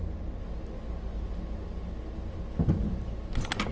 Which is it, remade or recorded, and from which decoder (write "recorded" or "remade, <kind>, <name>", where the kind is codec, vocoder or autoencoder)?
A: recorded